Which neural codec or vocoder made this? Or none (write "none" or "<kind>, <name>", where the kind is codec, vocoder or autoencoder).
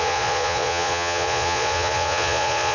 vocoder, Vocos